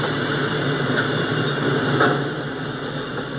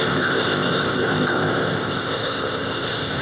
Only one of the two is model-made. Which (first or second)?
second